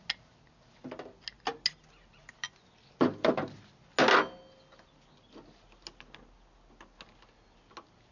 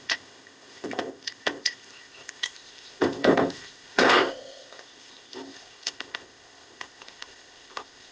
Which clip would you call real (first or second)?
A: first